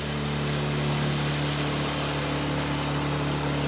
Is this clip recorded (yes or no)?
yes